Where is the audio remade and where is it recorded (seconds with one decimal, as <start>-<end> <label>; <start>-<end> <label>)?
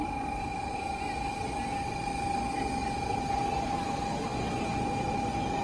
0.0-0.8 remade; 0.8-2.8 recorded; 2.8-3.6 remade; 3.6-5.6 recorded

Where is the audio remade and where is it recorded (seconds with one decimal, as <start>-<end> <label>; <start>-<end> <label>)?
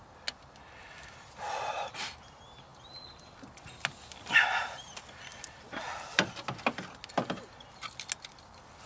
0.0-5.3 recorded; 5.3-6.3 remade; 6.3-8.9 recorded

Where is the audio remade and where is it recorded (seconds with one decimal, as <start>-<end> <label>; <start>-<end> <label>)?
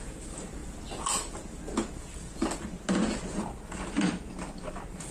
0.0-5.1 recorded